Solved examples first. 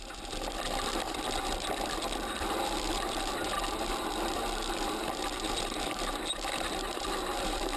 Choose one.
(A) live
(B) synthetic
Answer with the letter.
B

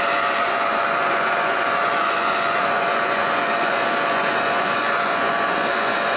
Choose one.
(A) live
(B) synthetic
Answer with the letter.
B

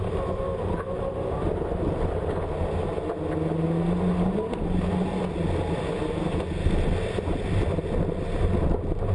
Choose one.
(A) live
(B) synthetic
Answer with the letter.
A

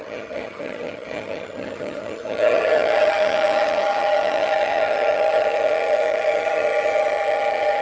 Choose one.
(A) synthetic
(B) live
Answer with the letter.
A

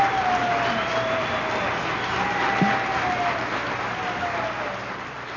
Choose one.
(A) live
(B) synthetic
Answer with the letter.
A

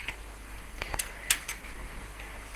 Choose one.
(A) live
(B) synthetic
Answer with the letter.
B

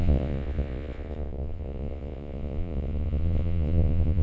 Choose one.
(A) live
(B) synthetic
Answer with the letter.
B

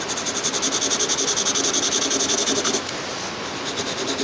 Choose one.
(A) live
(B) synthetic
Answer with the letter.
A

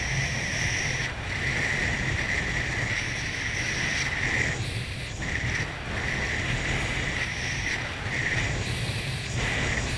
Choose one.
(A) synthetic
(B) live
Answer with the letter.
B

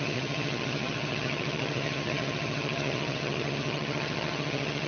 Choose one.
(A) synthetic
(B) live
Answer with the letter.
A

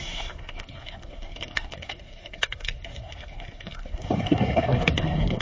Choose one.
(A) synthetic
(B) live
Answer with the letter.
A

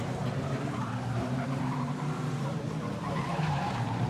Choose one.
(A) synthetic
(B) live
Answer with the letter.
A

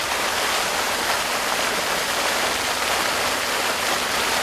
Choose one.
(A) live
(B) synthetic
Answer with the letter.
A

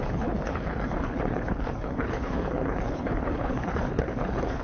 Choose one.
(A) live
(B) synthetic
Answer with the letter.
B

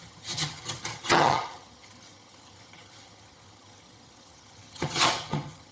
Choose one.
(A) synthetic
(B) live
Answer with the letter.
A